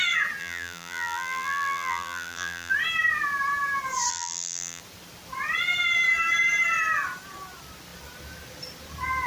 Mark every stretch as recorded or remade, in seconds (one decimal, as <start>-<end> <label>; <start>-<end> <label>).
0.0-0.4 recorded; 0.4-2.7 remade; 2.7-4.1 recorded; 4.1-4.8 remade; 4.8-9.3 recorded